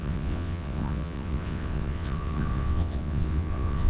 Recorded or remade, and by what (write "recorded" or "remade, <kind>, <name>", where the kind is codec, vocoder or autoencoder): remade, vocoder, WaveNeXt